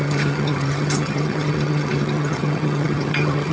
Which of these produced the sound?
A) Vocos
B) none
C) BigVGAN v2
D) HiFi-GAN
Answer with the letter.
D